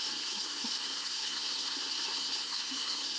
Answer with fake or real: fake